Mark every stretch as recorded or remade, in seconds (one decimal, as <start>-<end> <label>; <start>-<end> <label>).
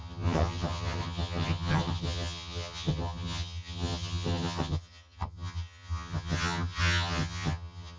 0.0-8.0 remade